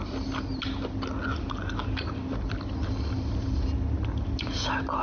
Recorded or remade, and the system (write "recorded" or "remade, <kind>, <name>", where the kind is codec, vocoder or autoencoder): recorded